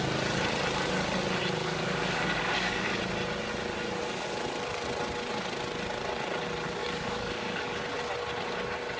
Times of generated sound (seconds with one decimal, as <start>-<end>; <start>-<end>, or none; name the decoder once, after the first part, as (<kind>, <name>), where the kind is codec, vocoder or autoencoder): 1.6-3.0 (codec, DAC); 6.8-7.8